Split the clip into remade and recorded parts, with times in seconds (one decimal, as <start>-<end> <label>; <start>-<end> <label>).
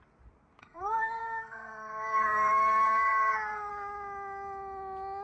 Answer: 0.0-0.6 recorded; 0.6-3.7 remade; 3.7-5.2 recorded